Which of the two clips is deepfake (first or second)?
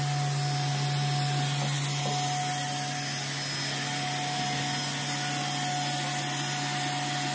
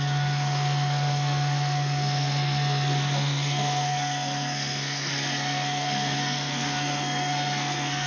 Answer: second